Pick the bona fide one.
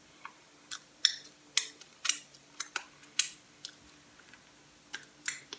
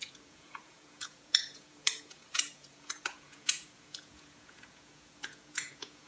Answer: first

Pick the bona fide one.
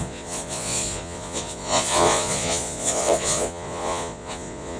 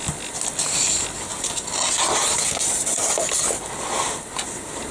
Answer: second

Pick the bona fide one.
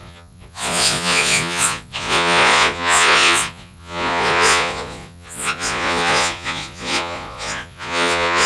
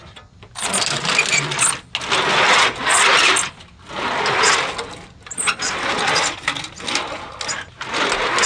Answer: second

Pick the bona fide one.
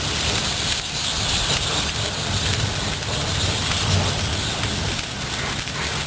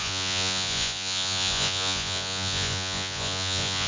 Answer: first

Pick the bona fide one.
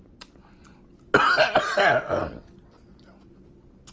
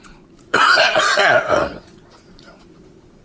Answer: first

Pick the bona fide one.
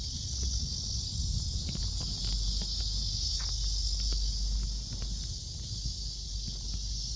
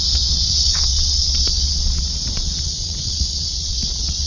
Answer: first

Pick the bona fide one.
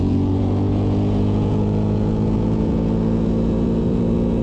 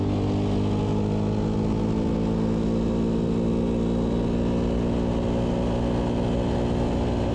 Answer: second